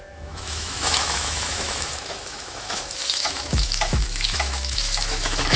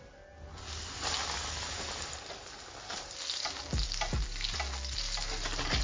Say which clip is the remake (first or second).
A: first